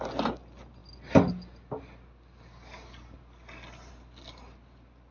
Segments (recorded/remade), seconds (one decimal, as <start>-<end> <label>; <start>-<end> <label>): 0.0-5.1 recorded